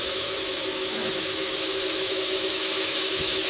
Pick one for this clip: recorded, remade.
remade